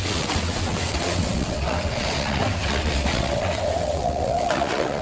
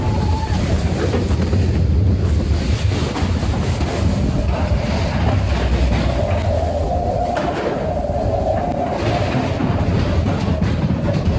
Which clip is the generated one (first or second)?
first